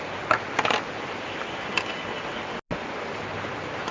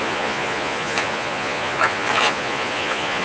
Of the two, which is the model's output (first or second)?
second